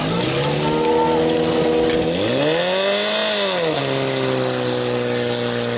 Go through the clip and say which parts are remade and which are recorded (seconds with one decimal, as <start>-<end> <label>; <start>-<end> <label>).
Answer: 0.0-5.8 recorded

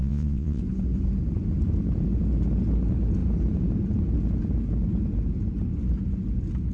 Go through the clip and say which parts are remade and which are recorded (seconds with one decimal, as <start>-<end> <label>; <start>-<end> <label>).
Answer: 0.0-0.6 remade; 0.6-6.7 recorded

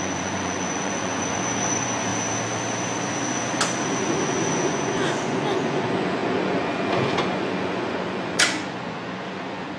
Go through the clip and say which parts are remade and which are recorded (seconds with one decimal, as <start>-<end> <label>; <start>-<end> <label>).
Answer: 0.0-2.1 remade; 2.1-4.0 recorded; 4.0-9.8 remade

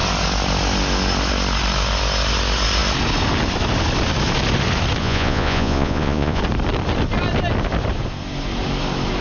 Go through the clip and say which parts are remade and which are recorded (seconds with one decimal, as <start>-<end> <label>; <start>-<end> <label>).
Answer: 0.0-5.0 recorded; 5.0-6.4 remade; 6.4-9.2 recorded

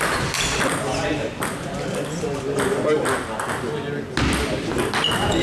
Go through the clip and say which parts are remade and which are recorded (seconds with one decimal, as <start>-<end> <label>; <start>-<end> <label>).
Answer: 0.0-5.4 recorded